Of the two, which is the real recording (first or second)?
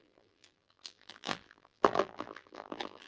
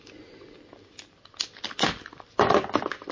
second